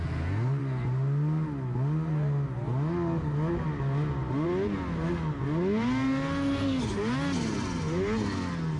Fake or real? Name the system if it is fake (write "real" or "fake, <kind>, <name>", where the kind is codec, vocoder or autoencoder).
real